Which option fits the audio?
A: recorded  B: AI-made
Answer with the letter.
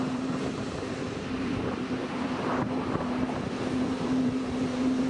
B